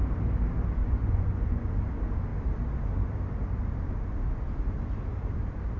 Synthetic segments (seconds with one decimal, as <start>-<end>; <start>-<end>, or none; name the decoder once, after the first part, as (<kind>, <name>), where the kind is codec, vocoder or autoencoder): 0.8-1.7 (vocoder, Vocos)